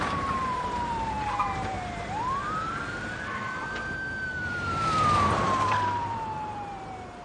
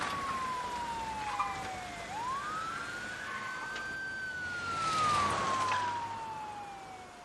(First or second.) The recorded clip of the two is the second